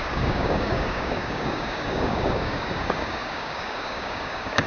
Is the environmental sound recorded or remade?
remade